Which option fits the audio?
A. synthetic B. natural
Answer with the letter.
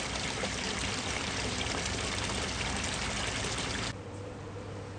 B